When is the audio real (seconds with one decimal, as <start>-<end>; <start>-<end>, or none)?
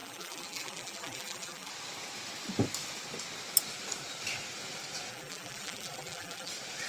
1.7-5.1; 6.5-6.9